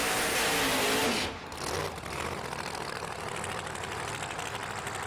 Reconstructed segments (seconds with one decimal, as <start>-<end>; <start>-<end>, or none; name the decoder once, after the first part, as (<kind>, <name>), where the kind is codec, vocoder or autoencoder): none